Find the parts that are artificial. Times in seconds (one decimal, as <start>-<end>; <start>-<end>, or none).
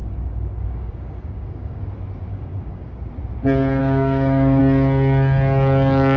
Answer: 0.0-1.8; 2.3-3.1; 3.8-4.6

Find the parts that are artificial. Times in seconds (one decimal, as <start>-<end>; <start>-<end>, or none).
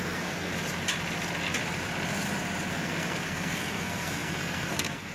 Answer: 0.0-0.5; 2.7-5.1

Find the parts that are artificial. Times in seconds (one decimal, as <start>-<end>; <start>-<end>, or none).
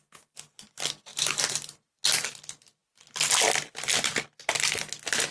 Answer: none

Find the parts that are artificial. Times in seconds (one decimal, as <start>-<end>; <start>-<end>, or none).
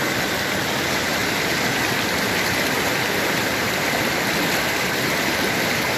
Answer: 3.6-4.4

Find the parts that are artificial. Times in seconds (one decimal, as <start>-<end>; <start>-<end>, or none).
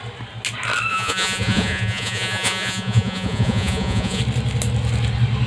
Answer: 0.9-4.2